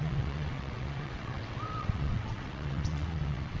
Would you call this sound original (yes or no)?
no